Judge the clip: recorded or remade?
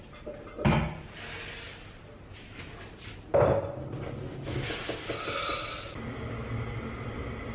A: recorded